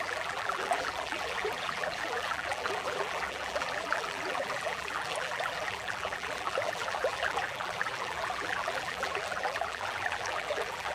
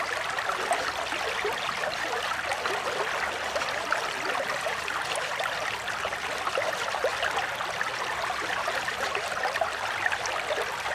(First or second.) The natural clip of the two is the second